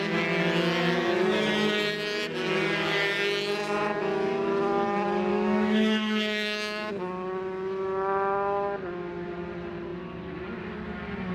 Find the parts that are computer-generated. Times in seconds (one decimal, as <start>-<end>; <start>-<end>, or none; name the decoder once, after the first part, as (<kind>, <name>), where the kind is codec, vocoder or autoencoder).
5.3-6.9 (autoencoder, DAC-VAE)